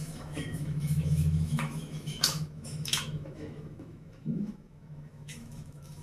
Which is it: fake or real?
fake